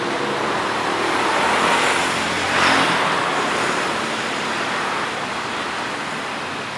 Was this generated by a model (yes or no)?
no